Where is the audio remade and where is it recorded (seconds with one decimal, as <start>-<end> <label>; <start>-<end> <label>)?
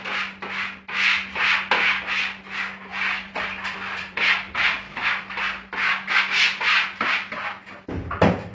0.0-2.9 recorded; 2.9-5.4 remade; 5.4-8.5 recorded